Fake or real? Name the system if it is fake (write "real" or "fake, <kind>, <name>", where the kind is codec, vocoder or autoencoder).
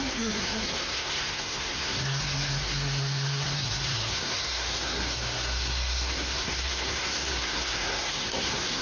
fake, codec, SNAC